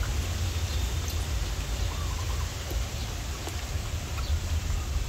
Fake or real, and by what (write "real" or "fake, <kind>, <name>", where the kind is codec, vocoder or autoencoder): real